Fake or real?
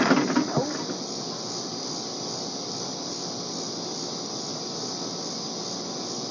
real